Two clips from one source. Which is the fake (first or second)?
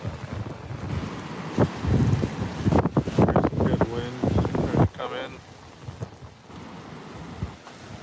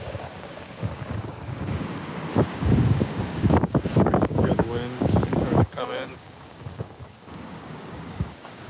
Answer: second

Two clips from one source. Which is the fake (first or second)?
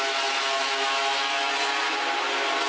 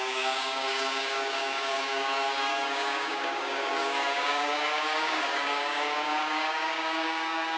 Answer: second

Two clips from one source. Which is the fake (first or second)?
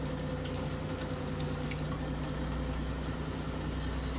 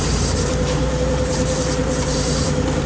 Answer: second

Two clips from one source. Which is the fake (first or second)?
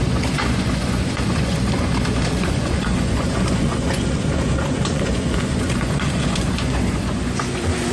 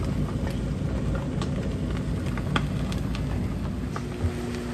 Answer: first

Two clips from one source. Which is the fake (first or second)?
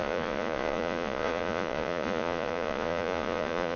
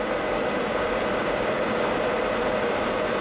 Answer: first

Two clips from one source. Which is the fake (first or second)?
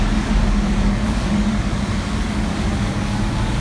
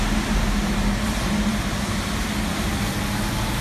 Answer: first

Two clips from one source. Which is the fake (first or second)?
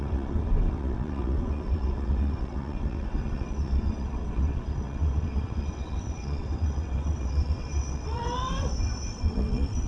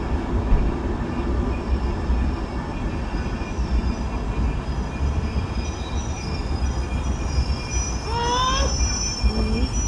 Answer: first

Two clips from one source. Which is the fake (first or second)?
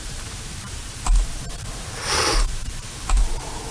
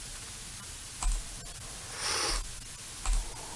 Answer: first